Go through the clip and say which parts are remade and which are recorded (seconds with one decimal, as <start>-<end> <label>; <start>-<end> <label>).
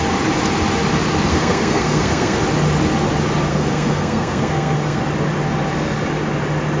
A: 0.0-1.3 recorded; 1.3-2.4 remade; 2.4-3.5 recorded; 3.5-5.0 remade; 5.0-6.8 recorded